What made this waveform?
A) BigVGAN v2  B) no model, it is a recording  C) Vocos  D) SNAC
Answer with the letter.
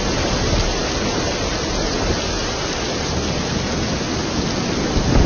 B